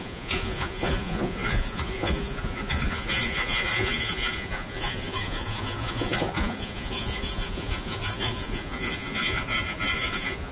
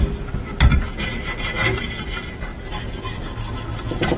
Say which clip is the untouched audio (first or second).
second